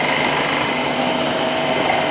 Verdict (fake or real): real